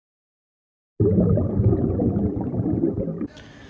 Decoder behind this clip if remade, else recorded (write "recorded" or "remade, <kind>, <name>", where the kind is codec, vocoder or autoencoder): recorded